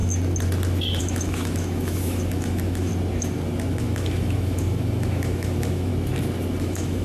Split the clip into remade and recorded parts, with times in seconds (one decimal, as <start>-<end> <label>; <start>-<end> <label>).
0.0-1.0 recorded; 1.0-2.9 remade; 2.9-3.8 recorded; 3.8-5.9 remade; 5.9-6.6 recorded; 6.6-7.0 remade